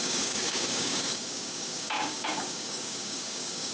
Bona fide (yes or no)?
no